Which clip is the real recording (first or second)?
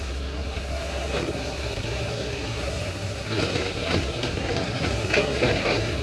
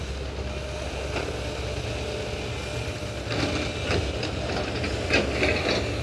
second